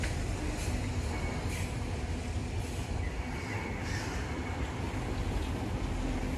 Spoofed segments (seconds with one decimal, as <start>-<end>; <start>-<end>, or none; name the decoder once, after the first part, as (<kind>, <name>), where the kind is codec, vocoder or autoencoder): none